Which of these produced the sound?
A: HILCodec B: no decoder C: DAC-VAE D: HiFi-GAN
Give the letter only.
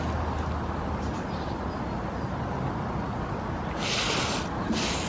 B